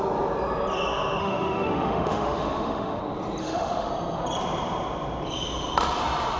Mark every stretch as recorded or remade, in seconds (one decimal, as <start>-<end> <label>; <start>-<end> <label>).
0.0-1.2 recorded; 1.2-3.0 remade; 3.0-3.4 recorded; 3.4-3.9 remade; 3.9-6.4 recorded